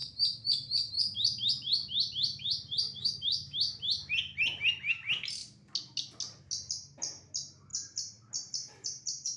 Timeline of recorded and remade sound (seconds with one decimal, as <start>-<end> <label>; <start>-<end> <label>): 0.0-3.0 recorded; 3.0-3.6 remade; 3.6-9.4 recorded